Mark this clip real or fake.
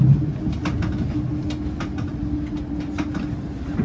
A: real